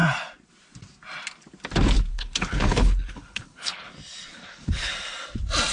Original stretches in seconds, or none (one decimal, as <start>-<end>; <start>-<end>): 0.0-2.1; 3.9-4.3; 4.9-5.7